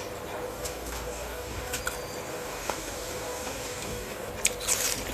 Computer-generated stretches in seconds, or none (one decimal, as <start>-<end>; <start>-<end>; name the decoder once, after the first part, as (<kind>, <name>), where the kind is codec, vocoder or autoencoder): 0.5-1.8 (codec, DAC); 2.3-4.3